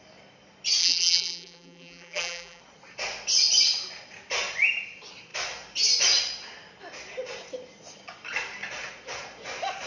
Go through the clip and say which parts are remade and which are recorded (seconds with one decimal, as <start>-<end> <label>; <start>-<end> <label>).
0.0-0.8 recorded; 0.8-2.6 remade; 2.6-9.9 recorded